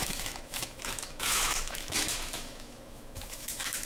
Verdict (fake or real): fake